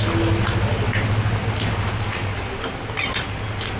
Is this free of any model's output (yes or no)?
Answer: yes